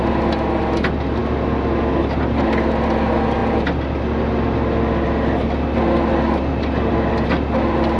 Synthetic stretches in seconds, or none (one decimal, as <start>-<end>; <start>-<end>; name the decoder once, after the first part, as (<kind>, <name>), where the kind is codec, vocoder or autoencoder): none